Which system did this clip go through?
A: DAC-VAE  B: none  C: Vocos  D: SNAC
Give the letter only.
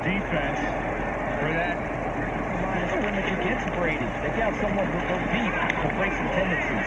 B